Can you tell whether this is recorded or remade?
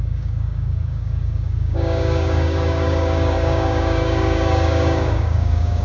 remade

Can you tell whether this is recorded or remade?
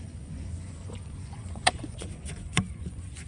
remade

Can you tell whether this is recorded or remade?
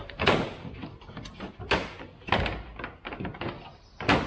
recorded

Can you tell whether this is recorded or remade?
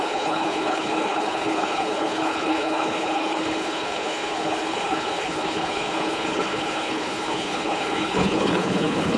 remade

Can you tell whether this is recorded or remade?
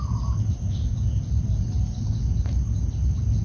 recorded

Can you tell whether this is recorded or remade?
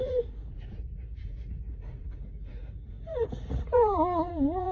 remade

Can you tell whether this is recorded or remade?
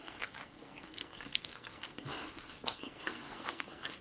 remade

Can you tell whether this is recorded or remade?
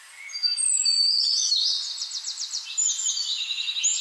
recorded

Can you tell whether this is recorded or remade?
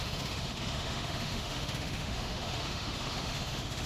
remade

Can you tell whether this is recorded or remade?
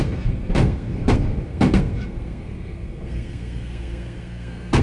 remade